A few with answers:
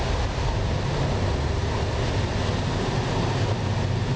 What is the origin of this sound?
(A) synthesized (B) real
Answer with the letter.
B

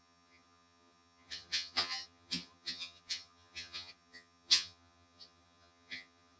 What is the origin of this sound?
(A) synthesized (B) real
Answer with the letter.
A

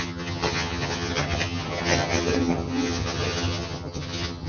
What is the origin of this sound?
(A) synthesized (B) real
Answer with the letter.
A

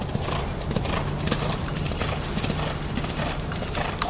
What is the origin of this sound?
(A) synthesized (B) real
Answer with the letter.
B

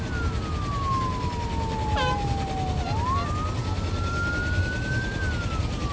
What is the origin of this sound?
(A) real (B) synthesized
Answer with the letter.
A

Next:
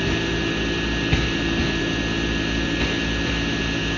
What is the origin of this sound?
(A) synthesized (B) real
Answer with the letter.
B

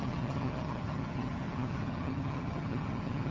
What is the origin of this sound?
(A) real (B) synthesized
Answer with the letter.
B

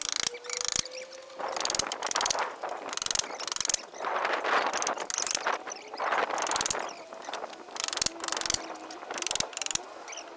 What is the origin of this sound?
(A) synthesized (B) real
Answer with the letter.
B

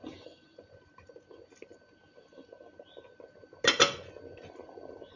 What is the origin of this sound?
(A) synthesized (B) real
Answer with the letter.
B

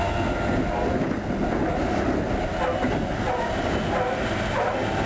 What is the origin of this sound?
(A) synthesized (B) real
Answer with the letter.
B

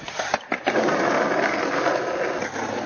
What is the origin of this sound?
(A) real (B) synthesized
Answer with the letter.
A